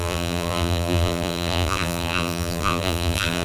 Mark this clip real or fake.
fake